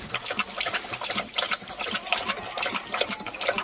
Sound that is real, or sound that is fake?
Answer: real